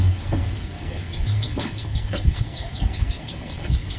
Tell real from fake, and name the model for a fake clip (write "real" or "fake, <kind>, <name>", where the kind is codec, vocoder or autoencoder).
fake, codec, SNAC